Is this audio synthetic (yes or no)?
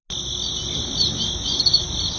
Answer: no